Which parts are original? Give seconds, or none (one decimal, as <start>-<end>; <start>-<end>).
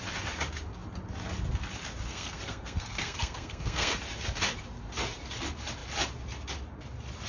0.0-2.1; 3.9-7.3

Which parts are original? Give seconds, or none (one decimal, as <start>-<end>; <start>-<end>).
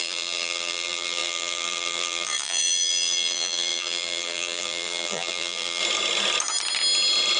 5.8-7.4